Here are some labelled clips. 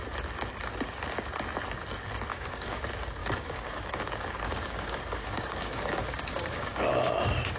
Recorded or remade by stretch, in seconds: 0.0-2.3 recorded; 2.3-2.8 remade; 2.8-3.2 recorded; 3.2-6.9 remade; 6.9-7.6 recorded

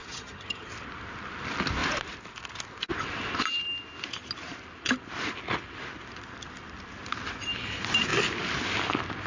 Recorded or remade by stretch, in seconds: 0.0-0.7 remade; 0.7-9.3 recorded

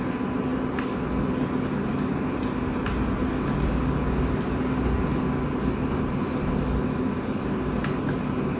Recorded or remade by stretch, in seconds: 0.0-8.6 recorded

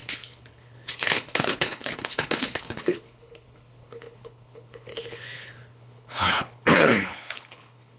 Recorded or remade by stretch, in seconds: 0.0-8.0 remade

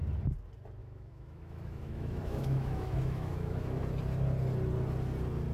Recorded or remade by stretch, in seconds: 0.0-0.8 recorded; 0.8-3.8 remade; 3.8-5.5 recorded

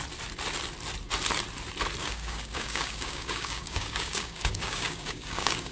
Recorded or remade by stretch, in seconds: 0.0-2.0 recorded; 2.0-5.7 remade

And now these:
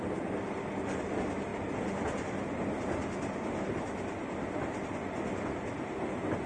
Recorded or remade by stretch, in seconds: 0.0-6.5 recorded

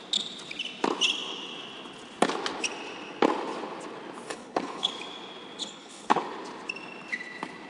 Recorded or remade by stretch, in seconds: 0.0-4.3 recorded; 4.3-4.9 remade; 4.9-5.6 recorded; 5.6-6.2 remade; 6.2-7.7 recorded